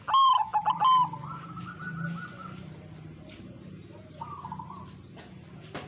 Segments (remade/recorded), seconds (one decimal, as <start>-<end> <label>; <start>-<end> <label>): 0.0-5.9 recorded